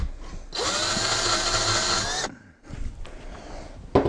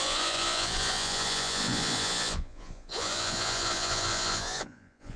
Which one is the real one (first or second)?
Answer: first